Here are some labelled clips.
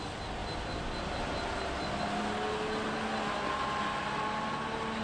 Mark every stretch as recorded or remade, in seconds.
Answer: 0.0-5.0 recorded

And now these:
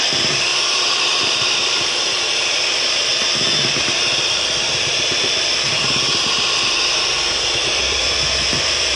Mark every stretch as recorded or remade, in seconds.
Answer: 0.0-3.1 remade; 3.1-7.6 recorded; 7.6-9.0 remade

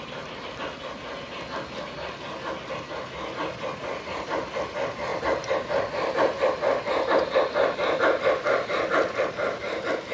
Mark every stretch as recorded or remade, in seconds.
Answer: 0.0-10.1 recorded

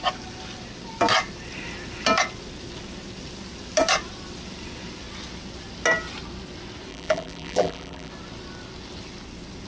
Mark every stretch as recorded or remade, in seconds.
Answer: 0.0-6.9 recorded; 6.9-8.1 remade; 8.1-9.7 recorded

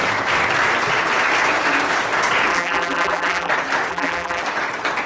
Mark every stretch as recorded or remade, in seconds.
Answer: 0.0-2.5 recorded; 2.5-3.5 remade; 3.5-3.9 recorded; 3.9-4.4 remade; 4.4-5.1 recorded